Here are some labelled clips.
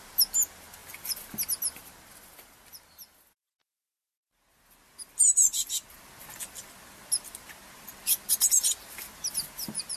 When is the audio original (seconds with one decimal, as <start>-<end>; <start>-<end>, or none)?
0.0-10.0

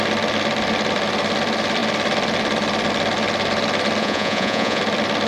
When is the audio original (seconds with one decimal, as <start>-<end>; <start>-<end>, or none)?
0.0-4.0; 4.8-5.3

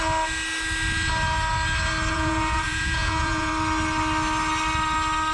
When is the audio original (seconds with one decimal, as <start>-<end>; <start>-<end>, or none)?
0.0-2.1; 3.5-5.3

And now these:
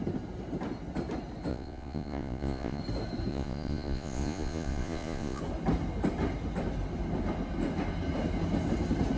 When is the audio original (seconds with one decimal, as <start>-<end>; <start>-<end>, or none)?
0.0-1.5; 2.8-3.3; 5.4-9.2

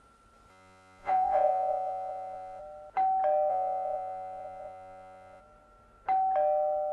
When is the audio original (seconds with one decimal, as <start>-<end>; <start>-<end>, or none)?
0.0-0.5; 2.6-3.5; 5.4-6.9

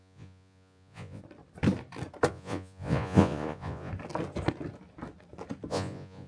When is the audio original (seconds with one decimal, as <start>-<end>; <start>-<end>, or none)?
1.2-2.3; 3.9-5.7

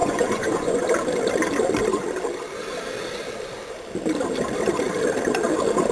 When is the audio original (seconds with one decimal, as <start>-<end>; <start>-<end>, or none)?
0.8-5.9

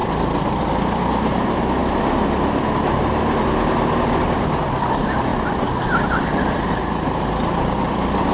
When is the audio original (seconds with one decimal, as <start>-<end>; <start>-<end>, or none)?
0.0-8.3